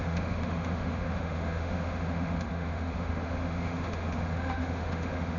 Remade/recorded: remade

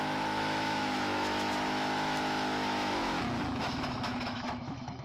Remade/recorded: remade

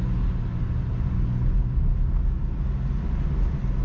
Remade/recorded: recorded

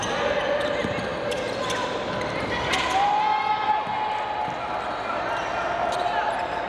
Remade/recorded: recorded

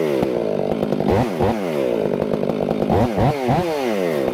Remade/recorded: recorded